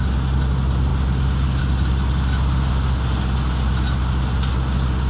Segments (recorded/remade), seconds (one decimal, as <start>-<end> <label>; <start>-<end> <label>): 0.0-5.1 recorded